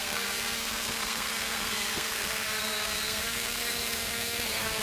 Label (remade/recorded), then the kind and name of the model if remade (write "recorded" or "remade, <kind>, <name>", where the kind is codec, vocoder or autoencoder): remade, codec, SNAC